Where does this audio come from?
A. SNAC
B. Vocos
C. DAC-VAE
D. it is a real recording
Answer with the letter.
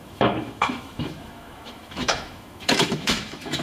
C